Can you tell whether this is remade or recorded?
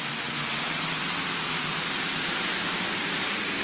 recorded